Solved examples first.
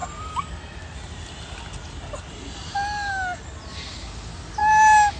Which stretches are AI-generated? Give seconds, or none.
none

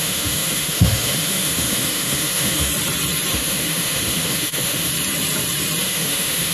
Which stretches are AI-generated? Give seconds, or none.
0.0-2.7 (autoencoder, DAC-VAE); 3.3-4.9; 5.8-6.5

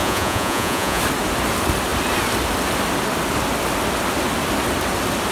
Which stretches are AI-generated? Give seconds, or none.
0.0-1.0 (vocoder, Vocos)

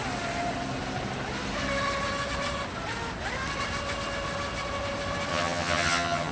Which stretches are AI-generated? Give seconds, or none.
5.3-6.3 (vocoder, HiFi-GAN)

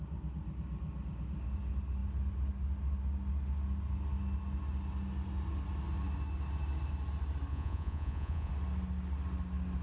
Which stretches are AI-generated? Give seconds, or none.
7.5-8.5 (vocoder, Vocos)

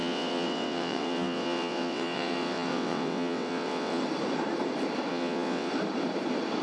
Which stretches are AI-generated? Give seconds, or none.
0.0-4.0 (vocoder, WaveNeXt); 5.1-5.7

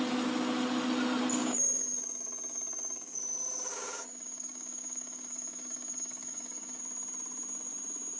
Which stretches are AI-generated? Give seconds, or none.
1.4-3.2 (codec, DAC); 3.7-6.8

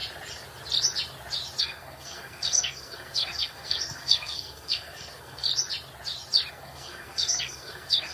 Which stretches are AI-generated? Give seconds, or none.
1.6-5.5 (codec, SNAC); 6.5-8.1